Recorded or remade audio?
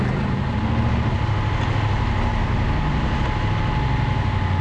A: recorded